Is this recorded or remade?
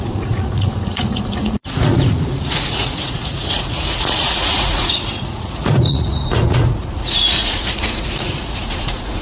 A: remade